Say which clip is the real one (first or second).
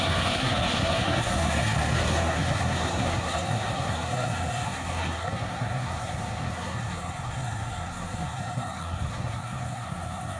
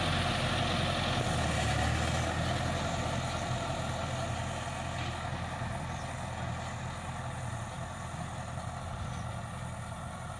second